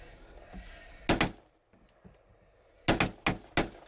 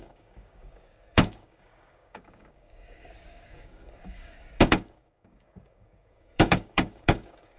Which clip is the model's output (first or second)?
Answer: second